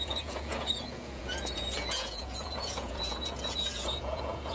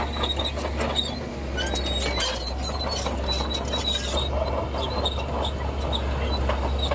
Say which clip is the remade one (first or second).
first